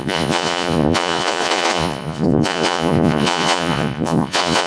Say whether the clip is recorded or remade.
remade